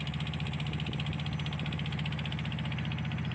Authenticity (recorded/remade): recorded